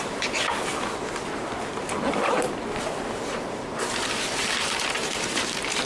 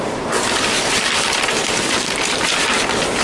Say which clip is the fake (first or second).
second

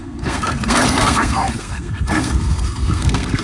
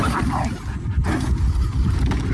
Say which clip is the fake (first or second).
first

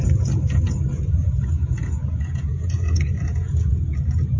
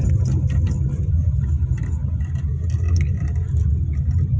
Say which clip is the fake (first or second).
first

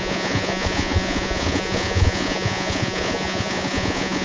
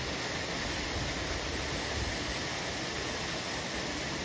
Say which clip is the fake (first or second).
first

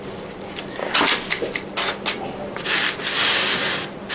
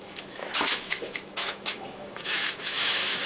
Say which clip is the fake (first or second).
second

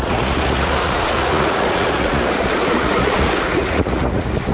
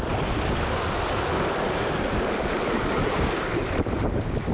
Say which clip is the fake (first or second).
first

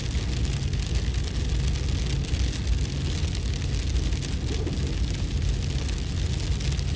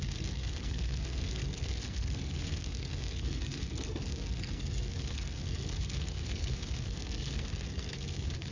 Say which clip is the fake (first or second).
second